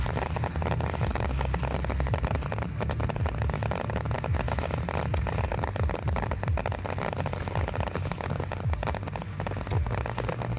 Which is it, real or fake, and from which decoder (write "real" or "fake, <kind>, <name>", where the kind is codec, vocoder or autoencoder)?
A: real